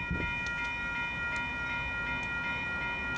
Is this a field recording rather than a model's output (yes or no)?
yes